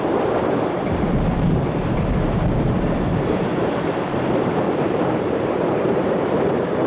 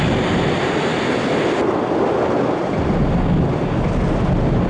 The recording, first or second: second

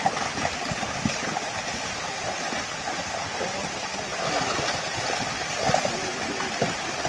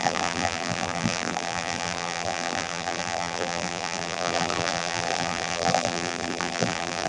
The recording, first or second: first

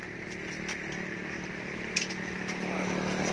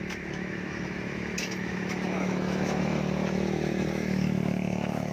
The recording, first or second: first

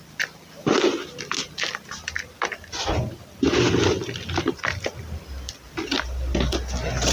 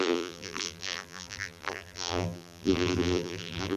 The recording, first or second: first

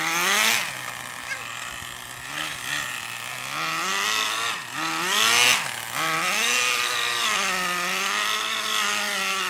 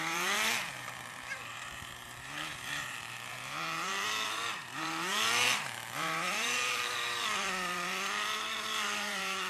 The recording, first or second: first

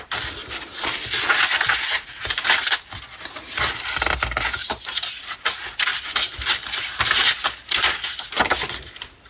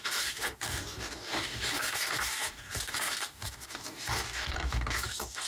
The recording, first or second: first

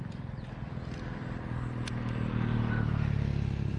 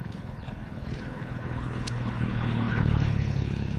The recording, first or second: first